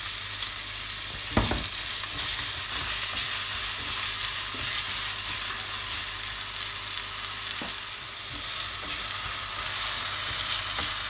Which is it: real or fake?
real